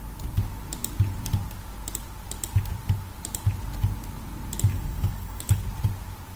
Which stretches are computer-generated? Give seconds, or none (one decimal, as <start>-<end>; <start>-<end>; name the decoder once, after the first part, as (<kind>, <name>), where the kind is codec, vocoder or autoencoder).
4.7-5.6 (codec, DAC)